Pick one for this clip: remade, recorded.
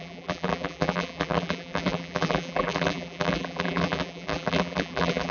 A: remade